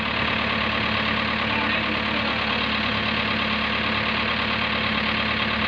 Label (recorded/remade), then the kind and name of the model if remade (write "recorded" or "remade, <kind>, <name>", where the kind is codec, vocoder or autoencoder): recorded